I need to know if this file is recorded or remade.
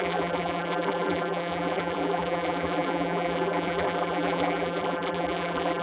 remade